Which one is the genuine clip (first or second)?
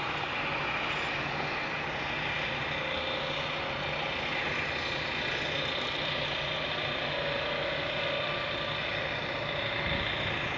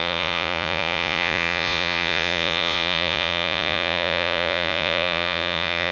first